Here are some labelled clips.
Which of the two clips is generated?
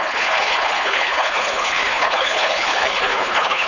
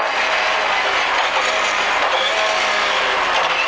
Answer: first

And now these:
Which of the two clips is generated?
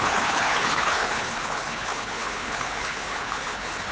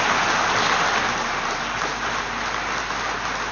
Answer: first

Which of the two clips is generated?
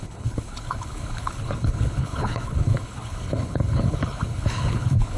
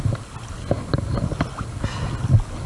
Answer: first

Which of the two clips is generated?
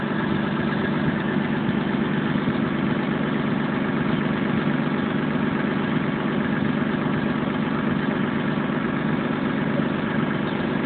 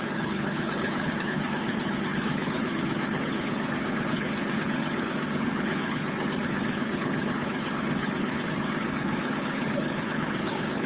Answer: second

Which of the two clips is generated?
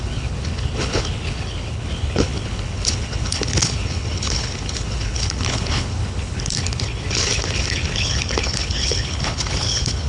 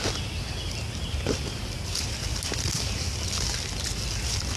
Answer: first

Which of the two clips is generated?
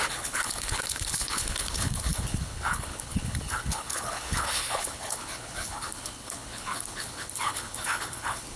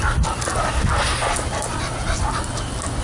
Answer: first